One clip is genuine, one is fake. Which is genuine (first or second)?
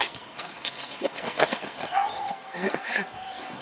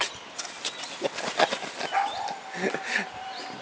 second